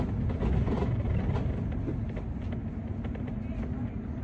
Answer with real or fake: real